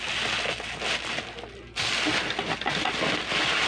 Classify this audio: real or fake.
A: real